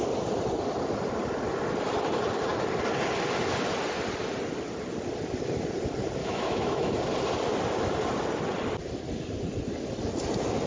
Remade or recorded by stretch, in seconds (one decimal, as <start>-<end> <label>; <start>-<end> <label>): 0.0-6.2 recorded; 6.2-6.9 remade; 6.9-10.7 recorded